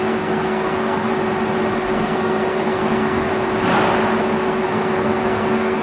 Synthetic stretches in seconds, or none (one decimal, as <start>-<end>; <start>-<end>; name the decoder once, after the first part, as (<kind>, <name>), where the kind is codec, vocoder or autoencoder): 0.0-1.1 (codec, SNAC); 1.8-3.3; 4.2-5.8